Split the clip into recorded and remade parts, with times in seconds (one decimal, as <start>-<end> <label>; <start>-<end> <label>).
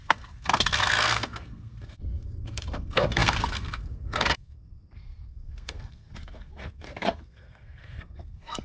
0.0-8.6 remade